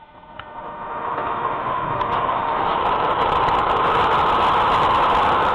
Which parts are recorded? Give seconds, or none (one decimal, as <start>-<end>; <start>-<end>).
2.8-5.5